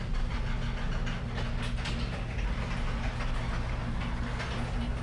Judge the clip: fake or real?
real